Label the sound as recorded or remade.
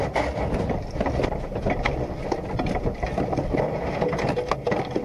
recorded